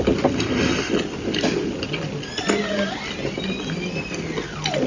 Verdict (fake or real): real